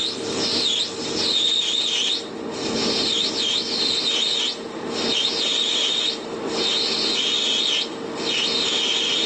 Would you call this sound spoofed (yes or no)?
no